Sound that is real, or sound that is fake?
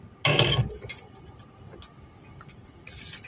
real